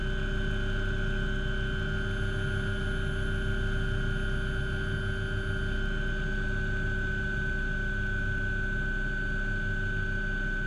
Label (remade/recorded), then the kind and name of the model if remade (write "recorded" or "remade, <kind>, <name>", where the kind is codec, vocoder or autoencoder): recorded